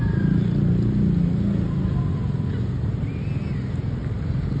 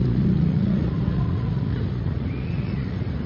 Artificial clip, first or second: second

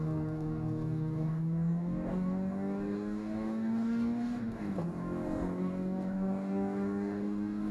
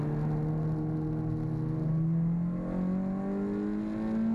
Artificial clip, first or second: first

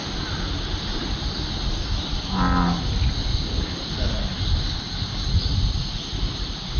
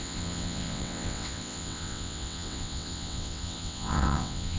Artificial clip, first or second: second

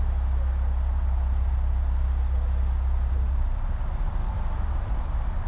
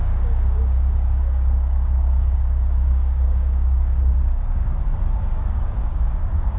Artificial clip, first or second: second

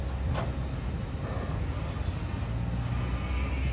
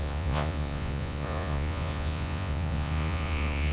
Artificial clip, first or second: second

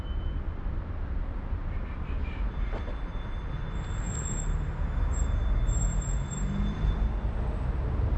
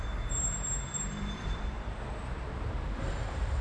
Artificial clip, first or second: second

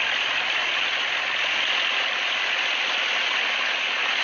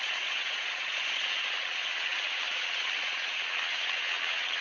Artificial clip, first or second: second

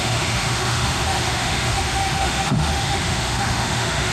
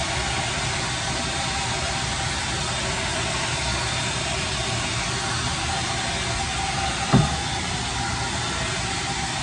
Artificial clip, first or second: first